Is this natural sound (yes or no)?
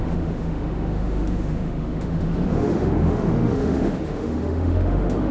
no